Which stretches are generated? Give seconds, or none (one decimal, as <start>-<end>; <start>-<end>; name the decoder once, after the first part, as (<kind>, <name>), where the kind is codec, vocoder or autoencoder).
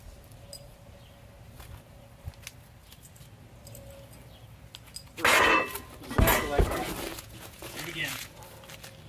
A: 7.1-8.4 (vocoder, Vocos)